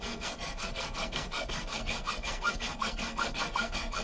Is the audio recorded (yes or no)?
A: no